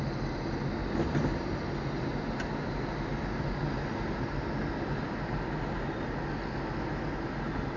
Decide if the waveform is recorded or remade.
recorded